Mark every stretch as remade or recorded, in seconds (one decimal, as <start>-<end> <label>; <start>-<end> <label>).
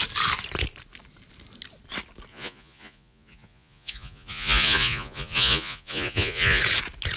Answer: 0.0-2.3 recorded; 2.3-6.6 remade; 6.6-7.2 recorded